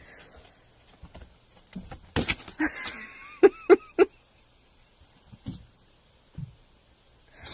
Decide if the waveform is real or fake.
real